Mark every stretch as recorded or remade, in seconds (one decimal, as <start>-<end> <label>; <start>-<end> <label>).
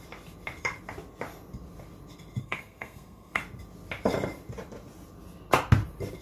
0.0-2.4 recorded; 2.4-3.4 remade; 3.4-6.2 recorded